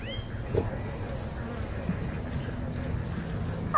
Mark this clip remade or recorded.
recorded